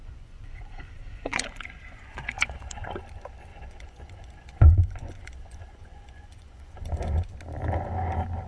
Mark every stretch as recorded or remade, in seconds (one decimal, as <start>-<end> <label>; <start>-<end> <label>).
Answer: 0.0-3.0 remade; 3.0-3.5 recorded; 3.5-7.3 remade; 7.3-8.5 recorded